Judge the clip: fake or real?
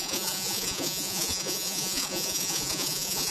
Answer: fake